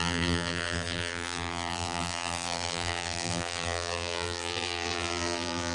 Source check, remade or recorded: remade